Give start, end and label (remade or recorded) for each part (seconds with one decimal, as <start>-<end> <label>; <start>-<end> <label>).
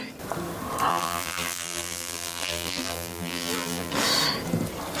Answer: 0.0-0.9 recorded; 0.9-3.9 remade; 3.9-5.0 recorded